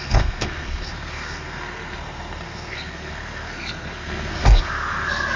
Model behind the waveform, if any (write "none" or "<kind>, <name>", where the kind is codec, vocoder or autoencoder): codec, SNAC